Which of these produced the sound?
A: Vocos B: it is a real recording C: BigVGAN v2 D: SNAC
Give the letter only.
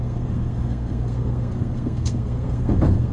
D